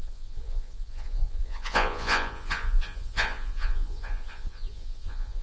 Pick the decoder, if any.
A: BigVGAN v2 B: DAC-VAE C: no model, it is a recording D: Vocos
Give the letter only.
D